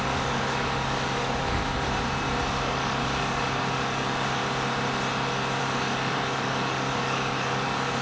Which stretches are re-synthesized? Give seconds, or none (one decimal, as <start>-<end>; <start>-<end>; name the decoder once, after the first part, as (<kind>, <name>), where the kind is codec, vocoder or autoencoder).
0.0-1.6 (codec, DAC); 2.5-4.4; 5.6-8.0